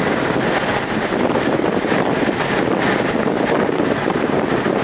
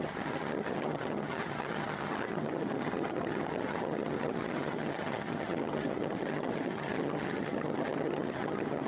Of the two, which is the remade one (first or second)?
second